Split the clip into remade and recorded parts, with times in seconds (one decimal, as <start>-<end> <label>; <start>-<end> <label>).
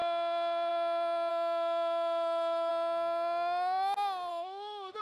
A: 0.0-1.3 recorded; 1.3-2.7 remade; 2.7-4.3 recorded; 4.3-5.0 remade